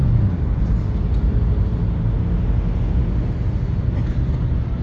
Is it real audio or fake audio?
real